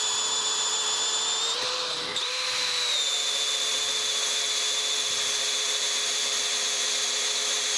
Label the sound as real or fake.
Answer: real